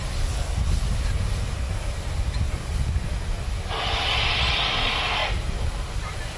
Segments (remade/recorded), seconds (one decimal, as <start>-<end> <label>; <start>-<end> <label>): 0.0-6.4 recorded